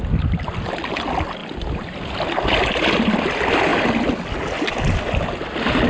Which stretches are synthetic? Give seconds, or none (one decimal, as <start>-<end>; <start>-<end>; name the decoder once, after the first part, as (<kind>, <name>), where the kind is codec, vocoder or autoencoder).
none

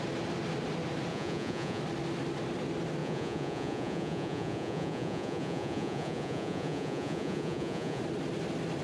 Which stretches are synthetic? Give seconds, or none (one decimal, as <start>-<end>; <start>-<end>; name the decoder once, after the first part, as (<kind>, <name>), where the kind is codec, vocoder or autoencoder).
1.1-1.8 (vocoder, Vocos); 3.0-8.0